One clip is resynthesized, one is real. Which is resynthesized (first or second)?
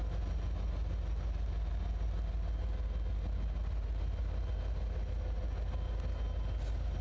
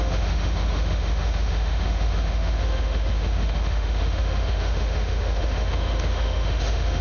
second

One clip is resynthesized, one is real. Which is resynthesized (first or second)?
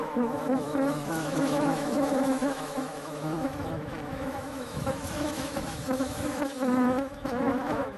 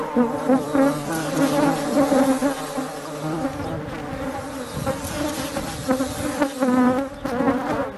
first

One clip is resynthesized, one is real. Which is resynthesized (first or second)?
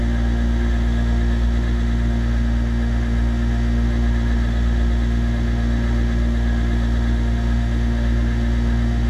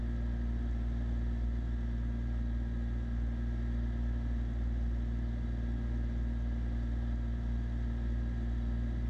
first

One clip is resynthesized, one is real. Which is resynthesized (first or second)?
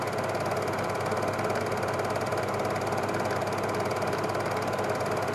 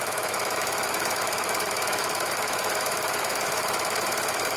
second